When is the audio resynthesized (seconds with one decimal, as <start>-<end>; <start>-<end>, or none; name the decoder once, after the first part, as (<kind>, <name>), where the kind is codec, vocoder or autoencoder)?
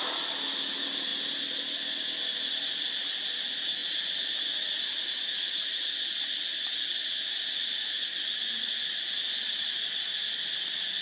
none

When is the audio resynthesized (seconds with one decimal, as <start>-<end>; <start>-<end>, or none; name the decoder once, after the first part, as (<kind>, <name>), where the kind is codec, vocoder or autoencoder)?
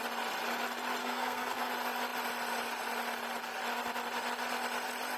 1.0-1.7 (codec, SNAC)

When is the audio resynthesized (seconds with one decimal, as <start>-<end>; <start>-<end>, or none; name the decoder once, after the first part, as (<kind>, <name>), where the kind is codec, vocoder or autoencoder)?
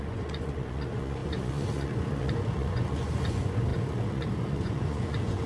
0.0-5.5 (vocoder, Vocos)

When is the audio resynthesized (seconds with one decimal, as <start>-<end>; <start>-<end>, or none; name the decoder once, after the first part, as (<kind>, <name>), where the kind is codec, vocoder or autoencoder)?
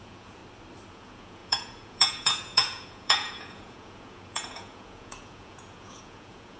0.0-0.4 (vocoder, Vocos); 0.9-6.6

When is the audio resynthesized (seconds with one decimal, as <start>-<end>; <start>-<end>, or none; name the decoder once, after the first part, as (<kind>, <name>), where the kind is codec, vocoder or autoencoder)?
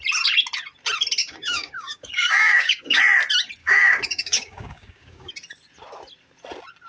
1.2-3.0 (codec, DAC); 3.6-5.3